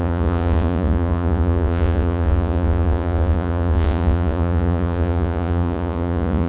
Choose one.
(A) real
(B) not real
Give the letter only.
B